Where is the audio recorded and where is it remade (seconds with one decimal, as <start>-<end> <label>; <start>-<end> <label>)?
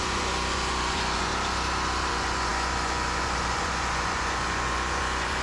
0.0-1.3 remade; 1.3-2.1 recorded; 2.1-5.4 remade